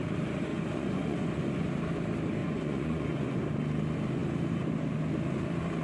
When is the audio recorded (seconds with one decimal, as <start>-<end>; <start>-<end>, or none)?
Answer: 0.0-0.5; 1.7-2.4; 3.4-5.8